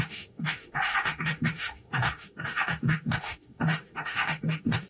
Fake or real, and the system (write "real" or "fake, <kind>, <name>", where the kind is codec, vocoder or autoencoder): fake, autoencoder, DAC-VAE